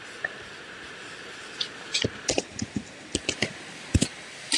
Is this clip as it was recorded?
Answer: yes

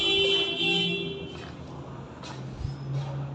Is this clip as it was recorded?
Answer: yes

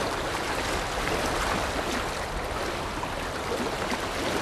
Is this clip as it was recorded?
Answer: yes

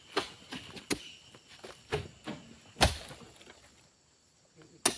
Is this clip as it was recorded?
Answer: yes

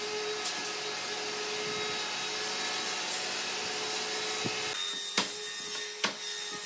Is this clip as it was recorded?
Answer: yes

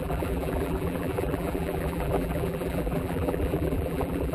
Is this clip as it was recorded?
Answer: no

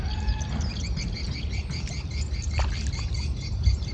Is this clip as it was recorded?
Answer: yes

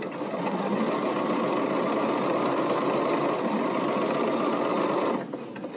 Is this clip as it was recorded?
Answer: yes